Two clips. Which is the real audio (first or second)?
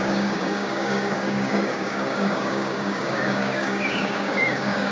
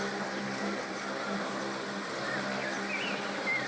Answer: second